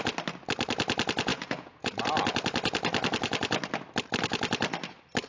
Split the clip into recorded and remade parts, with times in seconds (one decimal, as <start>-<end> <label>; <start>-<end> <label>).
0.0-1.3 recorded; 1.3-2.0 remade; 2.0-5.3 recorded